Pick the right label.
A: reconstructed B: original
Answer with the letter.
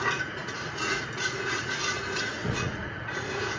A